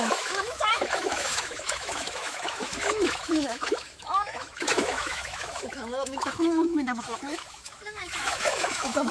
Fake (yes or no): yes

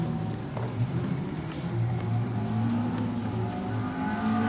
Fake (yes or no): no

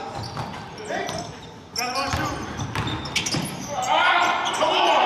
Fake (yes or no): no